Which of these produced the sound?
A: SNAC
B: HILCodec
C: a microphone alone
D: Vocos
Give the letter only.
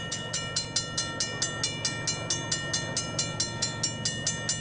C